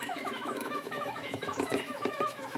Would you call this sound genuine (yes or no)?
no